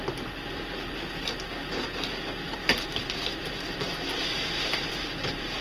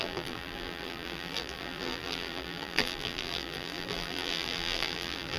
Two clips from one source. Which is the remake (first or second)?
second